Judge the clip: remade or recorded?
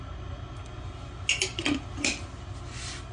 recorded